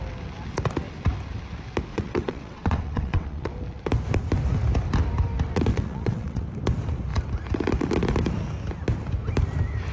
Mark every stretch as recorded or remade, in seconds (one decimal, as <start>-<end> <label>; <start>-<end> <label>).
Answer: 0.0-1.9 recorded; 1.9-3.5 remade; 3.5-5.7 recorded; 5.7-6.5 remade; 6.5-9.9 recorded